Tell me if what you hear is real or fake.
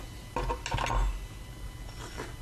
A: real